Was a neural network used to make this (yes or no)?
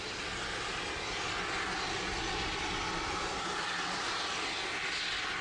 no